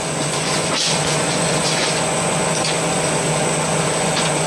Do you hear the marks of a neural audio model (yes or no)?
yes